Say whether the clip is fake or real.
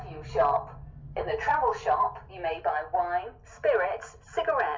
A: real